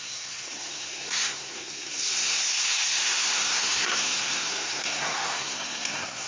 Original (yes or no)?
no